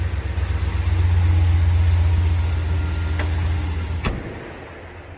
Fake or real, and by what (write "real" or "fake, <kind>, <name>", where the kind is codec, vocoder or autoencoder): real